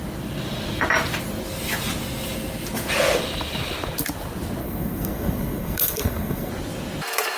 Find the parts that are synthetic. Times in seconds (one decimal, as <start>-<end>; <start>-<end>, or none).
4.6-6.5